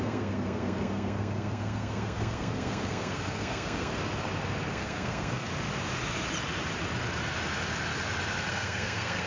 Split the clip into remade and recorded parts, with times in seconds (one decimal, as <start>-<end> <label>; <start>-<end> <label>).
0.0-3.9 remade; 3.9-4.7 recorded; 4.7-5.5 remade; 5.5-8.5 recorded; 8.5-9.3 remade